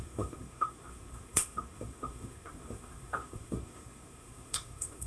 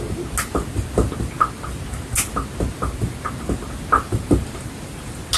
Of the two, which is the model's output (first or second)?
first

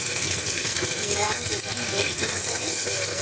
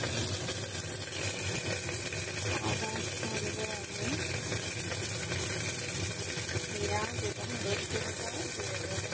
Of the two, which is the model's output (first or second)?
first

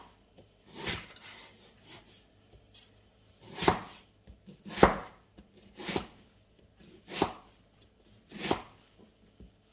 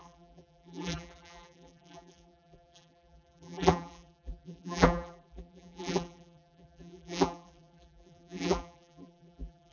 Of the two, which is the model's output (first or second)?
second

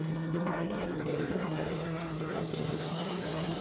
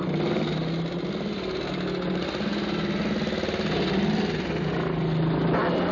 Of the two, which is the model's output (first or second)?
first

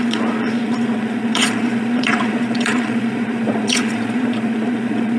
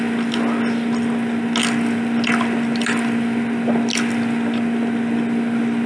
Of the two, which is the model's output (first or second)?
first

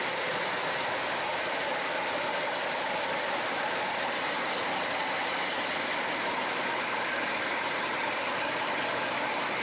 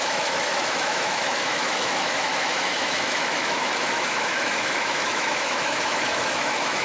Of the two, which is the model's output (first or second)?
second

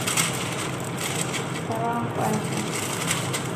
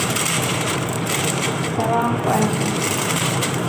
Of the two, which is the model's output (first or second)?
second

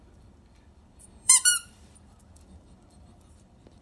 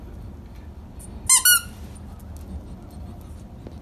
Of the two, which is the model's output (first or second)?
first